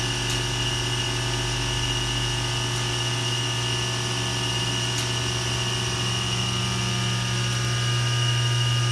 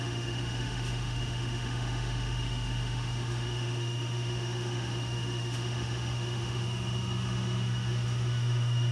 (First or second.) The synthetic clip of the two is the second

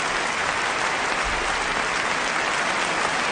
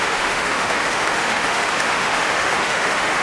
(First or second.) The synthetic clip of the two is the second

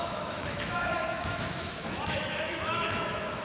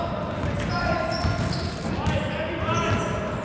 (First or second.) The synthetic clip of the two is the first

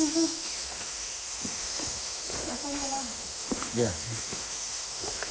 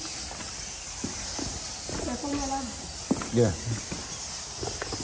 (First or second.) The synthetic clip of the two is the first